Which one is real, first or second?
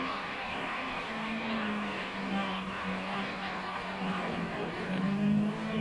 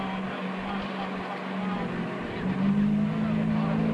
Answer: second